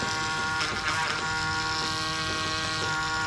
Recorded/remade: recorded